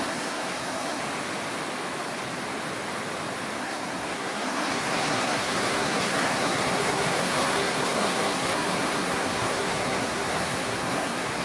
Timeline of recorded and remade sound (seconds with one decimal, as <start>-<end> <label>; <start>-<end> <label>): 0.0-1.0 remade; 1.0-3.6 recorded; 3.6-11.4 remade